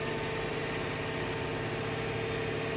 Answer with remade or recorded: recorded